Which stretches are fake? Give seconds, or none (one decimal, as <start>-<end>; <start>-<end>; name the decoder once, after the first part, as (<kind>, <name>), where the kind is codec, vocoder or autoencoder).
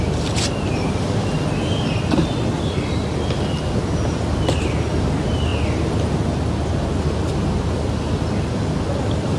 none